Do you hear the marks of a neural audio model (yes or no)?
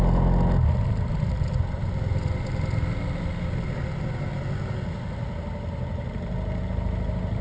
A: no